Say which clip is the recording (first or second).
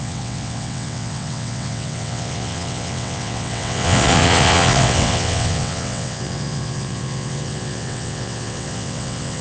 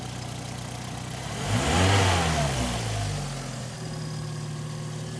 second